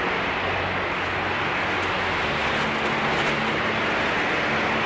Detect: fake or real real